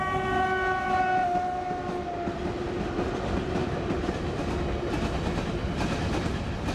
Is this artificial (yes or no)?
no